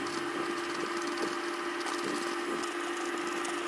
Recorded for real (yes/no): yes